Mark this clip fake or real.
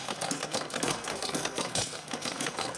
fake